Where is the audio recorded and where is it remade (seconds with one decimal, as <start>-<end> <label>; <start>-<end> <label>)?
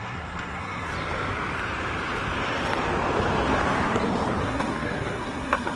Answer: 0.0-0.9 remade; 0.9-4.4 recorded; 4.4-5.8 remade